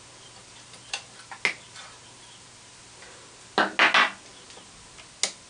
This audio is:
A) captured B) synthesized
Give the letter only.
A